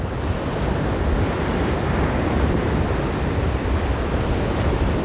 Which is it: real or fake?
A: real